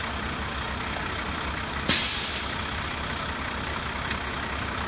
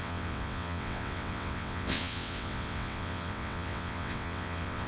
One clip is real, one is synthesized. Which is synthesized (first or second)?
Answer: second